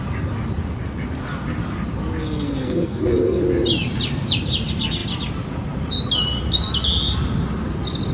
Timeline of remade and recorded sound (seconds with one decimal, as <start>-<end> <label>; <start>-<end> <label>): 0.0-2.2 recorded; 2.2-3.4 remade; 3.4-8.1 recorded